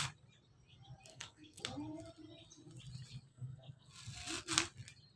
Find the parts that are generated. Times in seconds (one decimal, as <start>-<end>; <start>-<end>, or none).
1.1-1.6; 3.3-3.9

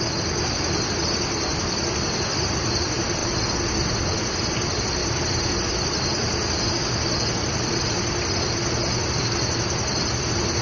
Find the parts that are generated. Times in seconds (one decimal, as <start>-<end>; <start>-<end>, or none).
none

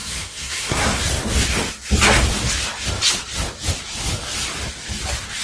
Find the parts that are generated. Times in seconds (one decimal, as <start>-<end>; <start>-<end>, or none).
0.0-1.0

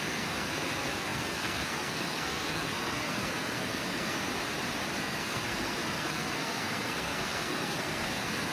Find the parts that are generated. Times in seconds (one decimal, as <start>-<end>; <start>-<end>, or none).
0.0-4.3; 5.0-8.5

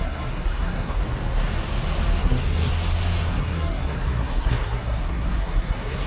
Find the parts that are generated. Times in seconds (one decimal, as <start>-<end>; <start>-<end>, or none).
0.0-1.0; 2.2-2.7; 3.3-6.1